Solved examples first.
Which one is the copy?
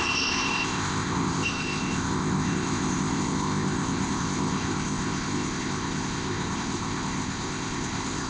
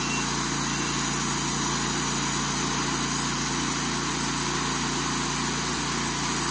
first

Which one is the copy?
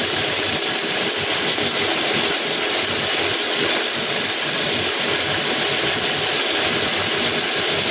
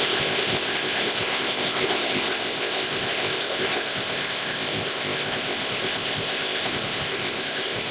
second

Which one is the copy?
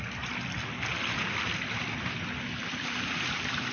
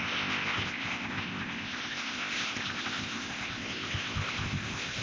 second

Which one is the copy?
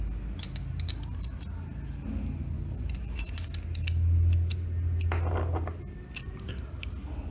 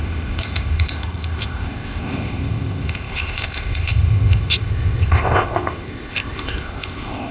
second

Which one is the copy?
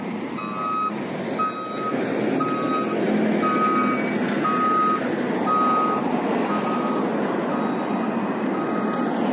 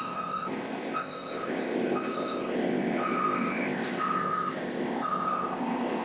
second